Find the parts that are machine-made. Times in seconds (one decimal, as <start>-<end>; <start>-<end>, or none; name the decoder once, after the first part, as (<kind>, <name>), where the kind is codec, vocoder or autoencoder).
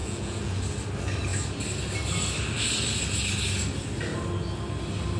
0.0-0.6 (vocoder, Vocos)